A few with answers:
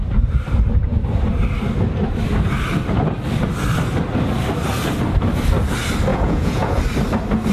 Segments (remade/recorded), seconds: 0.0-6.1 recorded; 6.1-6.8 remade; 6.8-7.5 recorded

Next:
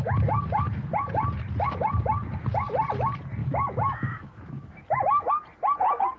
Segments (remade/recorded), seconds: 0.0-3.4 recorded; 3.4-5.3 remade; 5.3-6.2 recorded

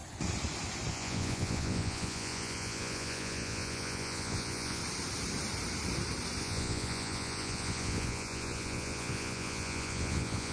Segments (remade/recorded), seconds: 0.0-0.9 recorded; 0.9-4.8 remade; 4.8-6.4 recorded; 6.4-10.5 remade

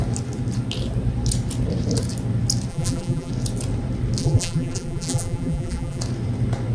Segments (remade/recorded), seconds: 0.0-2.7 recorded; 2.7-3.3 remade; 3.3-4.2 recorded; 4.2-6.0 remade; 6.0-6.7 recorded